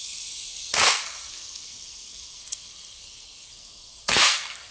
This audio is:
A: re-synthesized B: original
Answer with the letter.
A